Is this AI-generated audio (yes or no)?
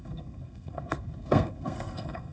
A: yes